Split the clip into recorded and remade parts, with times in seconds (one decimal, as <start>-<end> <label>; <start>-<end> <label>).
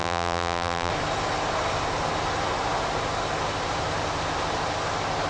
0.0-0.9 remade; 0.9-5.3 recorded